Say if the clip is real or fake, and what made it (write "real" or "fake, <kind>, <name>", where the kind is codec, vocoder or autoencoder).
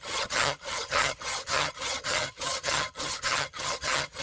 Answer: fake, vocoder, HiFi-GAN